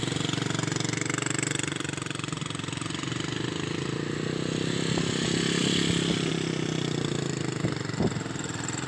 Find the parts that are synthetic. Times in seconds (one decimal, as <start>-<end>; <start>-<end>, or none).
none